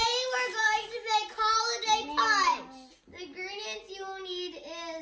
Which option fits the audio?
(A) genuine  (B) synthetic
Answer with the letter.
A